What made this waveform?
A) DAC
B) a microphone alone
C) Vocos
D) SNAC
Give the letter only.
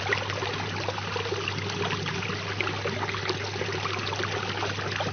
B